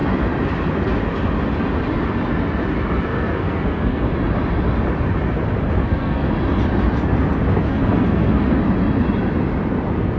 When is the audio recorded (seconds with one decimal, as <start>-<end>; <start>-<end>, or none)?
0.0-3.1; 4.1-5.8; 6.3-7.7; 8.6-10.2